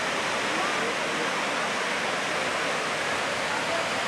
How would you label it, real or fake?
real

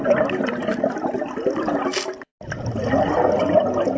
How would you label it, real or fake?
real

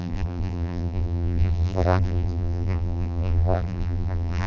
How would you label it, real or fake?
fake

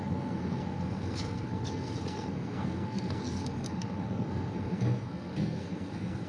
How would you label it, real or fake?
fake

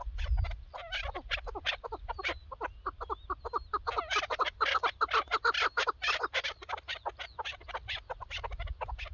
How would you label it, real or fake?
real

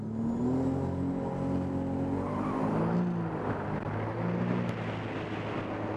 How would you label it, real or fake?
real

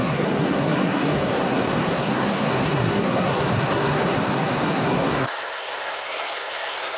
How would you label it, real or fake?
fake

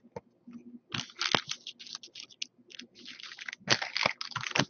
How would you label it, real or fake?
real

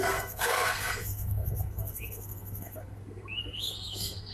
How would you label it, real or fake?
fake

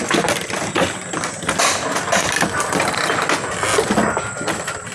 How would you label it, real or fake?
real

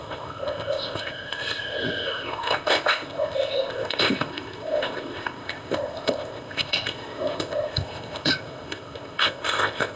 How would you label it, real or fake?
fake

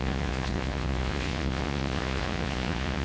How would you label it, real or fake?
fake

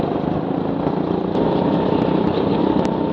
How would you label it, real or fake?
real